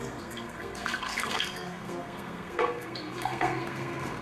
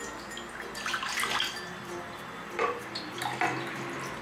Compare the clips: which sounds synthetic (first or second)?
first